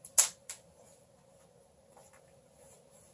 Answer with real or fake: real